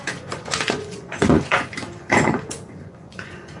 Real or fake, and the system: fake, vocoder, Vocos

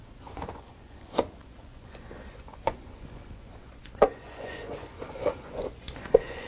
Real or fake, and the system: fake, vocoder, Vocos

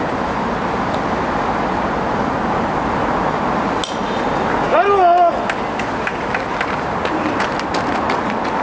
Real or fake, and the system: real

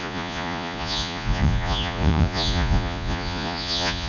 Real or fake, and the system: fake, vocoder, Vocos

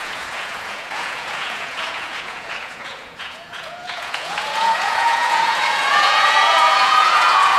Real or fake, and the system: fake, vocoder, Vocos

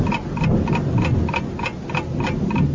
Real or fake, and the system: real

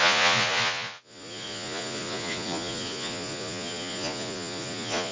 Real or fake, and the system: fake, vocoder, Vocos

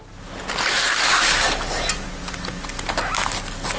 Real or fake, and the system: real